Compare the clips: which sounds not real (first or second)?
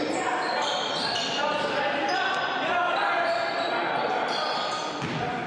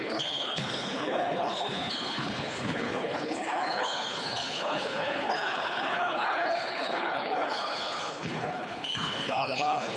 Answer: second